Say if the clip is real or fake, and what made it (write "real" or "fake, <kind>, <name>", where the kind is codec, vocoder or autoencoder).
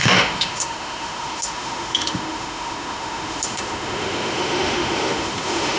fake, autoencoder, DAC-VAE